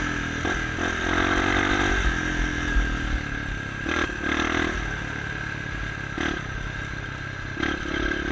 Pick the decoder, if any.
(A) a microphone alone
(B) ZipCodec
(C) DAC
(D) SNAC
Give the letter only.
A